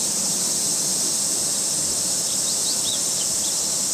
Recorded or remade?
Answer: recorded